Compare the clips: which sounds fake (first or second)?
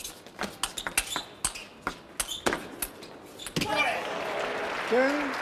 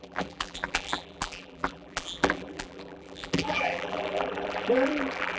second